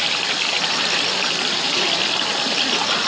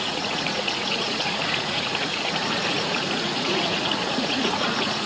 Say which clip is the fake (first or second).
second